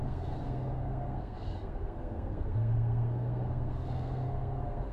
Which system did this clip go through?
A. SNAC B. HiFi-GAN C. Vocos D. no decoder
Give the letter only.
A